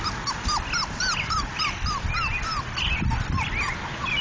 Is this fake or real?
real